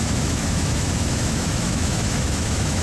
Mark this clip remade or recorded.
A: remade